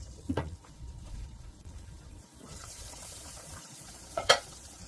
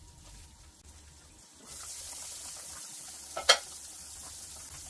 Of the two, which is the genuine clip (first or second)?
second